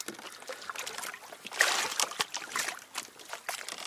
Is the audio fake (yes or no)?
no